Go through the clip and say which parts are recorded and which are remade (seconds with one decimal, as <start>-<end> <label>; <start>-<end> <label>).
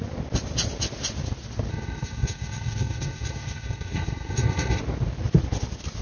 0.0-1.7 recorded; 1.7-4.8 remade; 4.8-6.0 recorded